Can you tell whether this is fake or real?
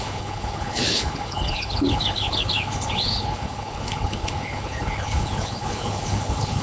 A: fake